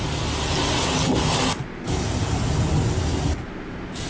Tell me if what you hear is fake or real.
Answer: real